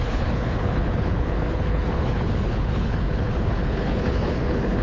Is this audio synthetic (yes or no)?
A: yes